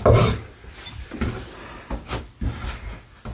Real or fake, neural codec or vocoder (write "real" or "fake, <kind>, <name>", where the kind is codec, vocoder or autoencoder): real